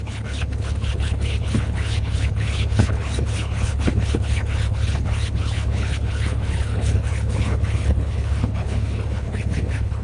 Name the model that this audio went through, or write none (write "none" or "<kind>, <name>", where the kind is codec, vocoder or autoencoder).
codec, HILCodec